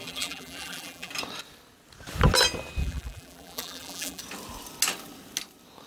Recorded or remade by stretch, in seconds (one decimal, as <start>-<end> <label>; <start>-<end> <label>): 0.0-1.1 remade; 1.1-2.8 recorded; 2.8-4.2 remade; 4.2-5.9 recorded